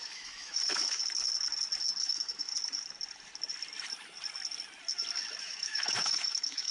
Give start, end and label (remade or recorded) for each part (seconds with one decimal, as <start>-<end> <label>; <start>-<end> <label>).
0.0-1.0 remade; 1.0-2.0 recorded; 2.0-2.5 remade; 2.5-5.4 recorded; 5.4-6.7 remade